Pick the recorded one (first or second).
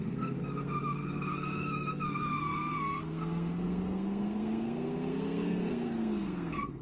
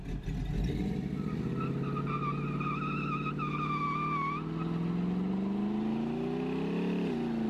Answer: second